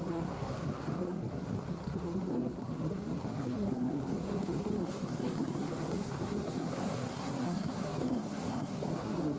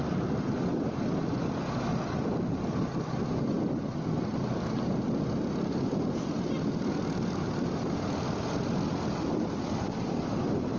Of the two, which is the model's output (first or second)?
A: first